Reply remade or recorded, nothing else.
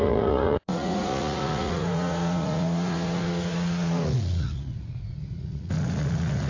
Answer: remade